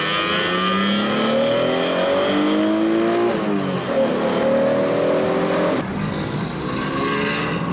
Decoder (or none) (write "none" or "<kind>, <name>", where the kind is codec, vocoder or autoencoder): none